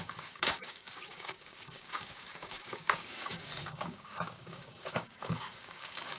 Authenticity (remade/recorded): remade